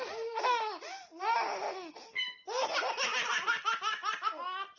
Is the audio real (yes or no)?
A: yes